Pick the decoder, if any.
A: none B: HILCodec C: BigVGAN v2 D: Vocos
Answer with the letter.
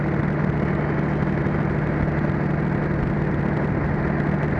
A